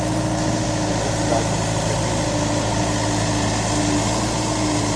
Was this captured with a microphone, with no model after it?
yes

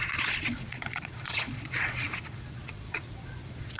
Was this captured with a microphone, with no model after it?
no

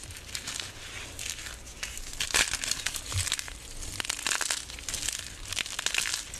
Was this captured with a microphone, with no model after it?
yes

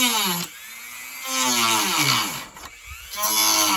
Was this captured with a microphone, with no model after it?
yes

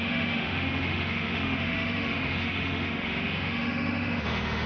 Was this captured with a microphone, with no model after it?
no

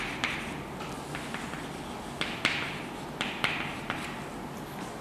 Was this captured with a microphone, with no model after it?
yes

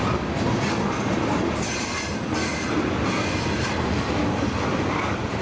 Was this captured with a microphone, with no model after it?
yes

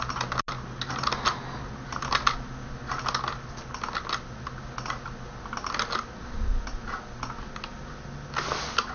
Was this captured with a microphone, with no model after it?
yes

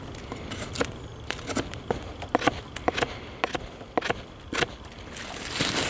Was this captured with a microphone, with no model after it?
yes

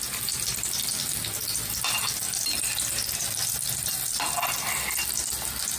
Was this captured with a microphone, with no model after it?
yes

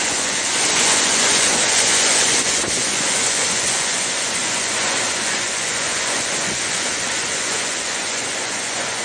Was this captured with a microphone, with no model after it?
no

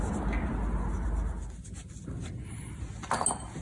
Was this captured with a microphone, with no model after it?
yes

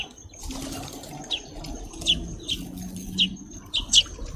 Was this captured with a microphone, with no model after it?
yes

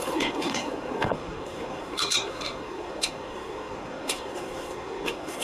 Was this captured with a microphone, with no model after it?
no